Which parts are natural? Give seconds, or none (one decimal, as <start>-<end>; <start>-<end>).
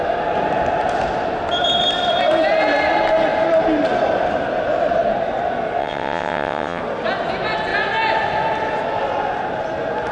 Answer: 0.0-5.8; 6.8-10.1